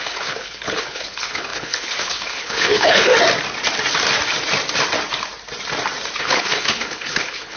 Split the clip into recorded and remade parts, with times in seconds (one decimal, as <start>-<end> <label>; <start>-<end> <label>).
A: 0.0-3.1 remade; 3.1-6.2 recorded; 6.2-7.6 remade